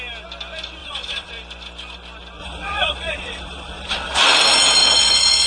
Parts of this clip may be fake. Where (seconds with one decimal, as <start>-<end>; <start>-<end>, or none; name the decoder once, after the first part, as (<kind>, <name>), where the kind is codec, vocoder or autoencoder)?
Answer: 0.8-1.3 (vocoder, Vocos); 2.4-4.2; 4.8-5.5